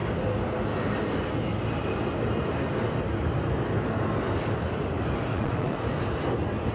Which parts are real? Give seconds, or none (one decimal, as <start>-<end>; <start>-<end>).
0.0-5.3; 5.8-6.7